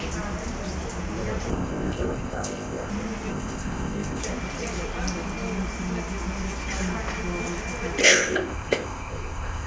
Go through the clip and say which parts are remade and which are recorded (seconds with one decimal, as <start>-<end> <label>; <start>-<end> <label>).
0.0-1.5 recorded; 1.5-2.9 remade; 2.9-3.3 recorded; 3.3-4.2 remade; 4.2-8.0 recorded; 8.0-9.7 remade